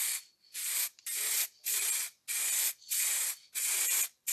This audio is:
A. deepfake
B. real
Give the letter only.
A